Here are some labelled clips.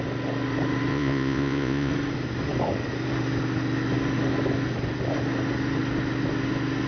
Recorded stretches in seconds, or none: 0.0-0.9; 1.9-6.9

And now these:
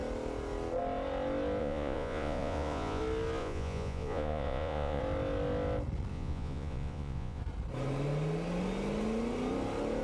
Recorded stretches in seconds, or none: 0.0-1.6; 3.0-3.4; 5.0-6.1; 7.4-10.0